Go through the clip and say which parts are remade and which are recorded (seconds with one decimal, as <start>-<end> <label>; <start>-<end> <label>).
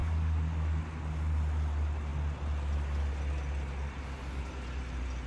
0.0-0.8 remade; 0.8-5.3 recorded